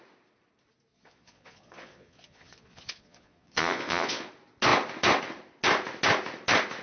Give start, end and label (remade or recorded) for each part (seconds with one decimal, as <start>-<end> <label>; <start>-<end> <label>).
0.0-0.9 recorded; 0.9-4.3 remade; 4.3-6.8 recorded